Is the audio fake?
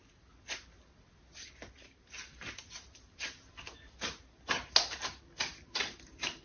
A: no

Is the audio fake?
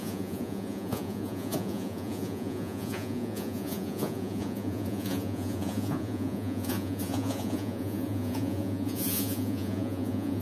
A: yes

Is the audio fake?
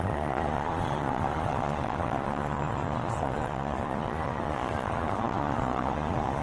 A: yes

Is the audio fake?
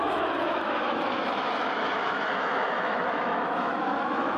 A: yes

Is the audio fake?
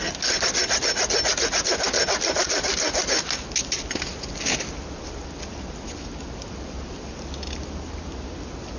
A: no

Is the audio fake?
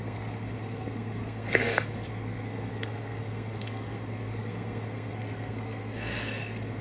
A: yes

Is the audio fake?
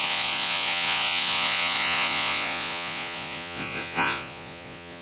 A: yes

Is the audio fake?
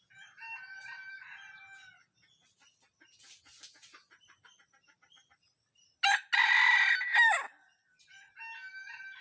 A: no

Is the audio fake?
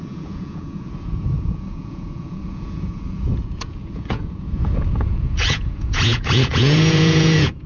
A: yes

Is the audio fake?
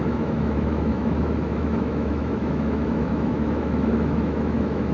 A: yes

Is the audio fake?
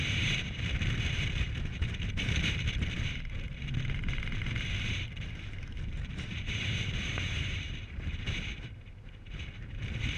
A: yes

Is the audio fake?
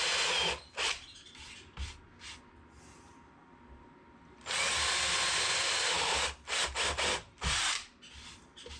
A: no